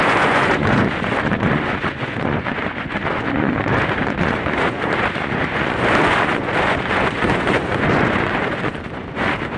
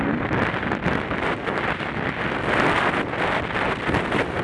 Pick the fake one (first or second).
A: first